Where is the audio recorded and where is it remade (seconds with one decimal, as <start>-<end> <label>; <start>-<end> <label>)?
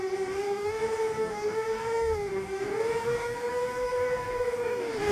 0.0-5.1 remade